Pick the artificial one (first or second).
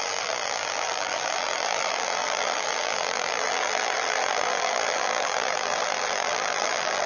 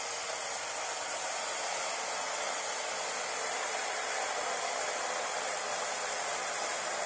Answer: first